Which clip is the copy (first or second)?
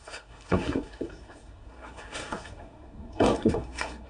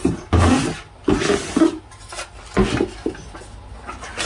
first